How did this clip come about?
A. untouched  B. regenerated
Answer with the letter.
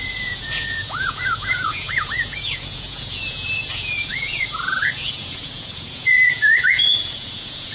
B